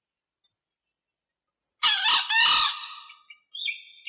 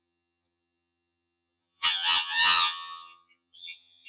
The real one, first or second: first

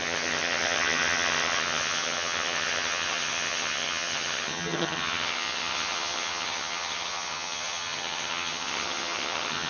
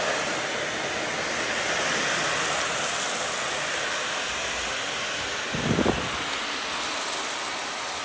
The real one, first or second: second